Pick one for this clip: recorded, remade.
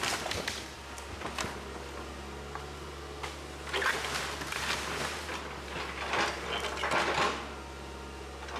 recorded